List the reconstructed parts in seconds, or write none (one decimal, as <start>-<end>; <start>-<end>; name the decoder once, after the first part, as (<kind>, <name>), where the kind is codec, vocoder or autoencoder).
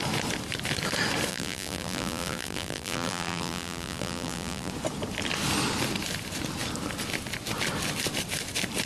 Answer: 1.3-4.7 (vocoder, BigVGAN v2)